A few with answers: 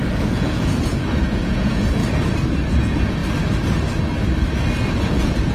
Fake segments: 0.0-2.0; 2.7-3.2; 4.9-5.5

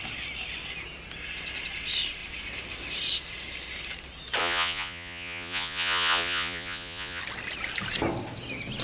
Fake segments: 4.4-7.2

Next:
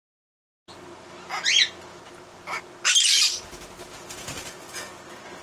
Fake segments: 3.9-4.9

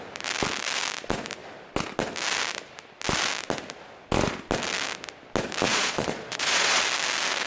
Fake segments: 5.7-6.8

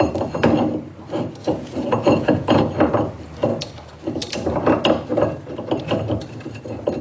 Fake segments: 1.4-2.6